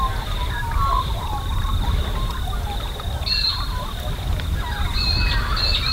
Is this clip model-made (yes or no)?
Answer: no